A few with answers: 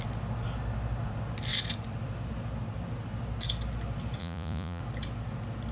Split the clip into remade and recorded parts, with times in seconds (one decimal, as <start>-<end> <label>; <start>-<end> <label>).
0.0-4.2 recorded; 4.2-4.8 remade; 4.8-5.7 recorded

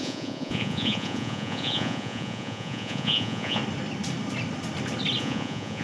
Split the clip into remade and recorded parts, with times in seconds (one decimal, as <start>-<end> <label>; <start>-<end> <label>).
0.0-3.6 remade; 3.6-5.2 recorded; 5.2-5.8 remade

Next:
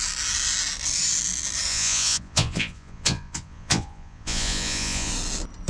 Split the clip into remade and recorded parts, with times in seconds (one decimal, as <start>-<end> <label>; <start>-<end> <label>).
0.0-1.7 recorded; 1.7-5.1 remade; 5.1-5.7 recorded

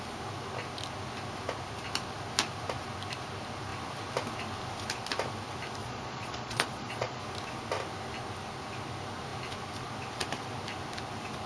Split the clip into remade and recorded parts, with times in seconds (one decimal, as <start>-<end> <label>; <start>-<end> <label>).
0.0-5.8 recorded; 5.8-7.2 remade; 7.2-11.5 recorded

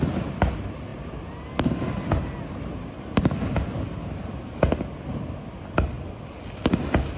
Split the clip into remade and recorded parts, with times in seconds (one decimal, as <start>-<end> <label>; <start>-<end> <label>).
0.0-7.2 recorded